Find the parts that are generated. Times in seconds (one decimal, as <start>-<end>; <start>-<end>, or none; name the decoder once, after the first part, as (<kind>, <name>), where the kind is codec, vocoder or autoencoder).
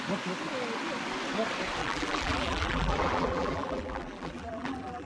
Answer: 1.8-5.1 (vocoder, BigVGAN v2)